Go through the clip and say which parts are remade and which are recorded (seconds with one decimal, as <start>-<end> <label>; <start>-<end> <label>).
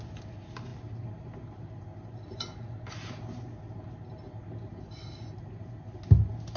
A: 0.0-6.6 recorded